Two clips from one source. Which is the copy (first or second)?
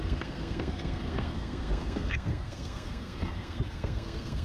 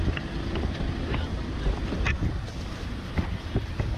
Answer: first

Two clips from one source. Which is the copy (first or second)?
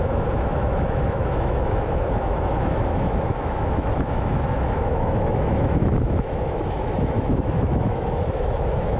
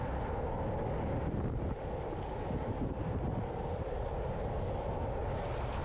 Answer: first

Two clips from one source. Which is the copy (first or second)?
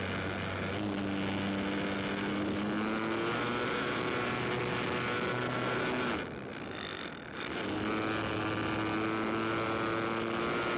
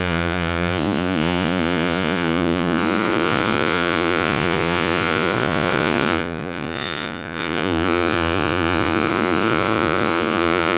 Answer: second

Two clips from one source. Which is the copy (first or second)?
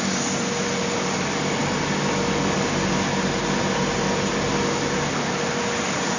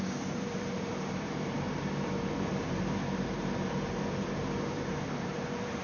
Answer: second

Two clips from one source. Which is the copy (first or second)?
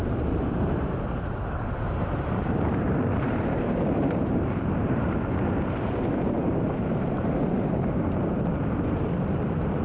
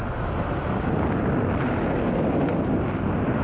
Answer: first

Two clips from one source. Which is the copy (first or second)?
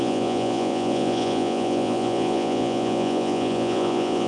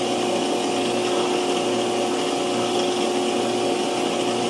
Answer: first